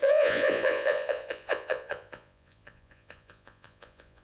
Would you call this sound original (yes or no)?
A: no